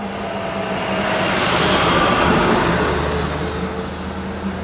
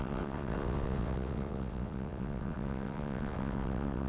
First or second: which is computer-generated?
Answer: second